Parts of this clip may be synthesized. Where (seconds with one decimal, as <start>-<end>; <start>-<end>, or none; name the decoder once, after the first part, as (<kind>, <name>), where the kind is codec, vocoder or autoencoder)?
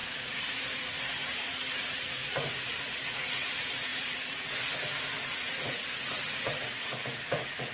0.0-7.7 (vocoder, Vocos)